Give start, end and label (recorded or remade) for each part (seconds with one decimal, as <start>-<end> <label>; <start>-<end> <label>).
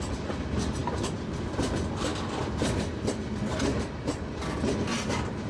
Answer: 0.0-5.5 recorded